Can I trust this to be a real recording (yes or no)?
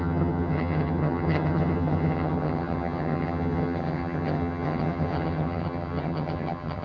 no